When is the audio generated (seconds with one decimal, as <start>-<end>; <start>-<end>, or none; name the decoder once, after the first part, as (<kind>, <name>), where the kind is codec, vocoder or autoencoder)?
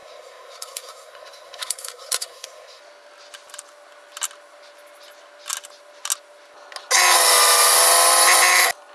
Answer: 0.0-2.8 (codec, SNAC)